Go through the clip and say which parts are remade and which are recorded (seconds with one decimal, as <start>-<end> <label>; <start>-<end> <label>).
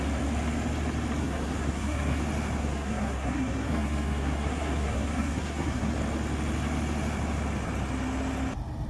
0.0-1.2 recorded; 1.2-2.2 remade; 2.2-2.6 recorded; 2.6-5.9 remade; 5.9-8.9 recorded